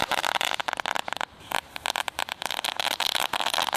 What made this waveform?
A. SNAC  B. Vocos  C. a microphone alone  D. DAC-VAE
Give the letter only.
C